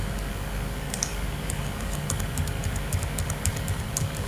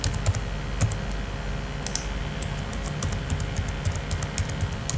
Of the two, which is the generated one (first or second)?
first